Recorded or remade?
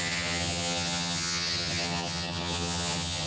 remade